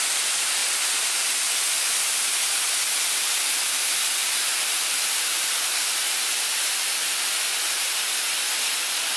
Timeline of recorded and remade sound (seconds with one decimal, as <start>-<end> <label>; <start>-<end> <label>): 0.0-4.2 recorded; 4.2-6.7 remade; 6.7-9.2 recorded